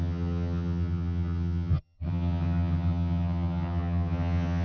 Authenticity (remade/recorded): remade